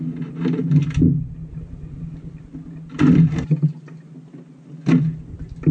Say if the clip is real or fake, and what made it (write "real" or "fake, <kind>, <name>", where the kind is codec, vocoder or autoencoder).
real